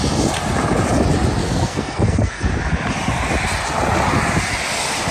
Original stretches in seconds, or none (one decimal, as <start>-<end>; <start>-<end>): 0.0-1.4; 2.5-5.1